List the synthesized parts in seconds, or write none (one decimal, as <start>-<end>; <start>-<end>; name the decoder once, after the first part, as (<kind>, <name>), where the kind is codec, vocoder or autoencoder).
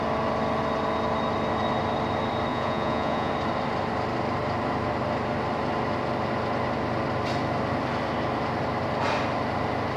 2.5-3.3 (vocoder, Vocos)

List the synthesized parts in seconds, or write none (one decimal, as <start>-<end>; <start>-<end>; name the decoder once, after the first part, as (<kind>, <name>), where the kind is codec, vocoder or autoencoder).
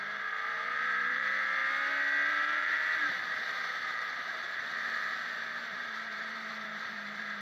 0.0-1.6 (vocoder, BigVGAN v2); 2.3-7.4